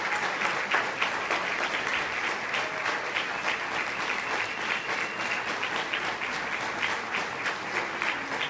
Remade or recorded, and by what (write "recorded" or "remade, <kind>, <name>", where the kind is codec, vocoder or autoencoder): recorded